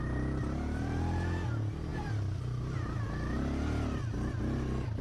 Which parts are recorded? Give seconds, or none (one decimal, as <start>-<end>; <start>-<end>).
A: 0.0-5.0